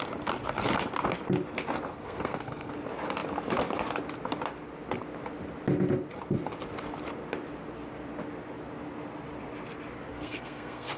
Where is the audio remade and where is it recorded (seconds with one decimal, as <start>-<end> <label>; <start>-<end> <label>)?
0.0-1.9 recorded; 1.9-2.7 remade; 2.7-10.1 recorded; 10.1-11.0 remade